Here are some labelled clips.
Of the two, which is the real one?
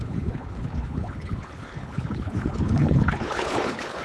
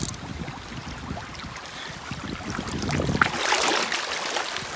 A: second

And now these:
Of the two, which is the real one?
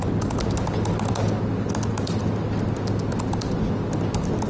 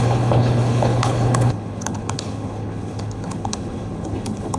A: first